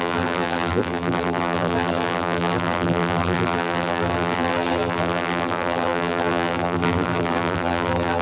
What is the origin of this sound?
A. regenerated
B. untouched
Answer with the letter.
A